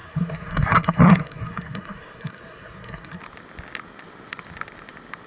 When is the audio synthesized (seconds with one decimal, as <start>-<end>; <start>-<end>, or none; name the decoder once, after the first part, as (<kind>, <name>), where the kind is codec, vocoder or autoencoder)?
0.0-3.2 (codec, SNAC)